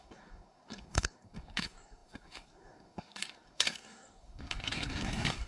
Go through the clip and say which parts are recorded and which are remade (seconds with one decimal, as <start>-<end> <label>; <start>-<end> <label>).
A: 0.0-5.5 remade

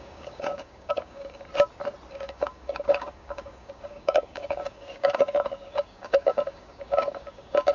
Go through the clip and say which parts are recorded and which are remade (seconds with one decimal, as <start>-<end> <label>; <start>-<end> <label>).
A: 0.0-1.5 remade; 1.5-2.1 recorded; 2.1-7.7 remade

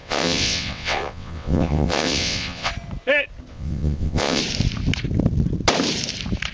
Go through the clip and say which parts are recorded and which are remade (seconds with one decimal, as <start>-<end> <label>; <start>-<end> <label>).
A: 0.0-2.7 remade; 2.7-3.5 recorded; 3.5-4.4 remade; 4.4-6.5 recorded

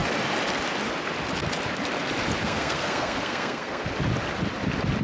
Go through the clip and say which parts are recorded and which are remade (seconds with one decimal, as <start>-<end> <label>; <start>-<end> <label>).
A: 0.0-2.4 recorded; 2.4-3.9 remade; 3.9-5.0 recorded

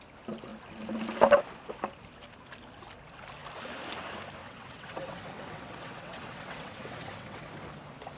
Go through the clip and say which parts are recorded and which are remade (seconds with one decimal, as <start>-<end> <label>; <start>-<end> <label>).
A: 0.0-4.4 recorded; 4.4-7.5 remade; 7.5-8.2 recorded

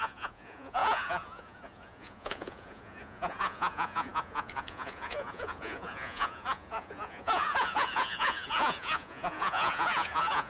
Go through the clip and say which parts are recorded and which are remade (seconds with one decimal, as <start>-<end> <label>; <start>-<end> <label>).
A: 0.0-10.5 remade

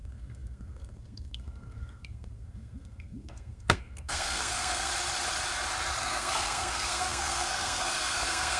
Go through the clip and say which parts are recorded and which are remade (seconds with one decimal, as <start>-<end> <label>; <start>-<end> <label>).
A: 0.0-4.9 remade; 4.9-6.0 recorded; 6.0-8.6 remade

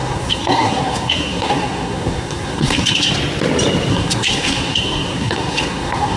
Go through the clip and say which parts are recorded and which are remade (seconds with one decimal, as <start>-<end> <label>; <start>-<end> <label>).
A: 0.0-3.1 remade; 3.1-3.9 recorded; 3.9-6.2 remade